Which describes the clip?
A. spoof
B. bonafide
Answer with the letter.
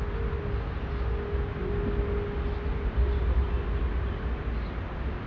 B